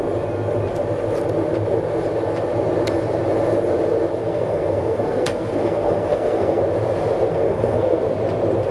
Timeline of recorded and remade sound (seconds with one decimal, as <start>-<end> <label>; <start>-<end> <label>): 0.0-4.2 recorded; 4.2-6.6 remade; 6.6-7.3 recorded; 7.3-8.0 remade; 8.0-8.7 recorded